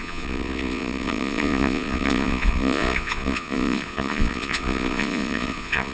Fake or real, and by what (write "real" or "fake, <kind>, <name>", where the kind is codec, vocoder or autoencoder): fake, vocoder, Vocos